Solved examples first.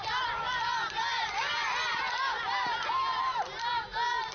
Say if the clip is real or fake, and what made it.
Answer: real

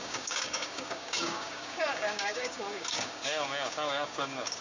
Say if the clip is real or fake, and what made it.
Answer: fake, codec, DAC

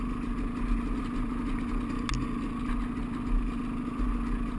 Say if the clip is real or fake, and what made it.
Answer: real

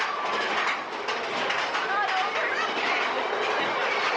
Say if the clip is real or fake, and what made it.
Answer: real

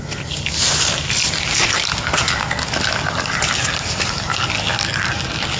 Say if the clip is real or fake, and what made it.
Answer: real